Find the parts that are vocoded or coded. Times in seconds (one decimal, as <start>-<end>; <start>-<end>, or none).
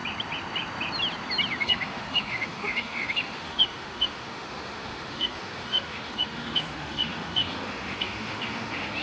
1.6-9.0